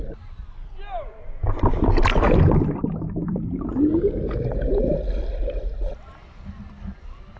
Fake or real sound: real